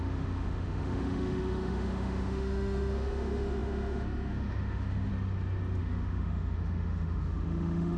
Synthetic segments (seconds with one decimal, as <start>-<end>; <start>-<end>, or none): 0.0-5.1; 5.8-8.0